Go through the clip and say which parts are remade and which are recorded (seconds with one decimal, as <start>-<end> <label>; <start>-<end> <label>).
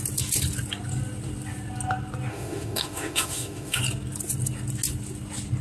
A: 0.0-2.3 recorded; 2.3-3.8 remade; 3.8-5.6 recorded